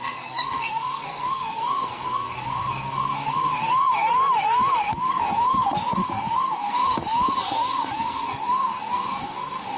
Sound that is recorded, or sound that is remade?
remade